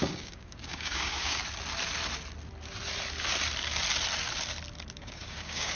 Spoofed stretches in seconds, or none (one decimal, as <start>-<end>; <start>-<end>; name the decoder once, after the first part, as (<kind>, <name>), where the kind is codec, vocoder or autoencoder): 0.0-1.4 (codec, DAC); 4.9-5.8